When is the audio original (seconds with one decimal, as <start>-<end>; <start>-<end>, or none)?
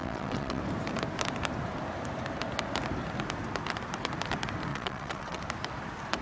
0.6-4.7; 5.4-6.2